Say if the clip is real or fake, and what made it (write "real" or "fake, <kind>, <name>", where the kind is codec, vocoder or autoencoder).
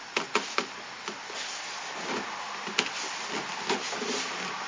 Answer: real